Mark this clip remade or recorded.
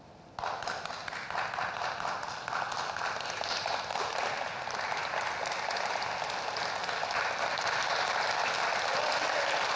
recorded